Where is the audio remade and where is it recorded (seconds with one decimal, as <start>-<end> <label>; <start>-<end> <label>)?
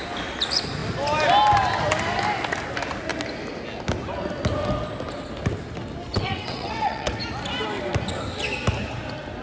0.0-6.1 recorded; 6.1-7.2 remade; 7.2-9.4 recorded